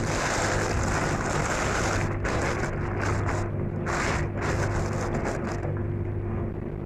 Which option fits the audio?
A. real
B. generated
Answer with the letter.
A